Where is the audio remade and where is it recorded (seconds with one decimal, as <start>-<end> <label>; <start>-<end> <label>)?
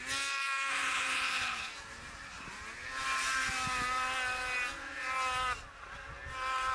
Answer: 0.0-0.7 recorded; 0.7-1.7 remade; 1.7-6.7 recorded